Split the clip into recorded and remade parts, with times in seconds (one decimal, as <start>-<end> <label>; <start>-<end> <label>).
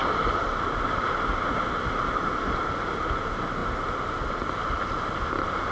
0.0-5.7 recorded